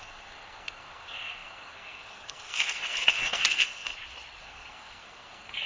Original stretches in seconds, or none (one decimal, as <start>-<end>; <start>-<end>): 3.9-4.4